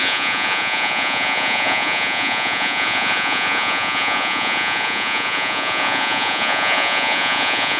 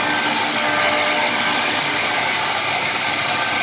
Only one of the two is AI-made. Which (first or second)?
first